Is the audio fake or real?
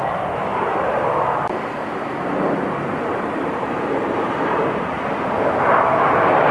real